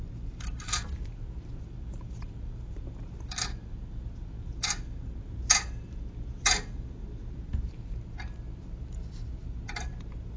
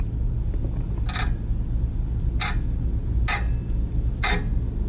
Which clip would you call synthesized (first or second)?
first